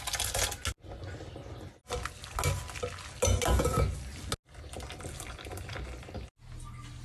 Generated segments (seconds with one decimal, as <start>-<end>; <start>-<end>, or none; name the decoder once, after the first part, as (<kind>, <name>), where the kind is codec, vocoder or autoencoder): none